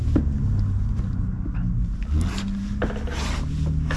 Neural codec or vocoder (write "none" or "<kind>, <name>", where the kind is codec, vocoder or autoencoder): none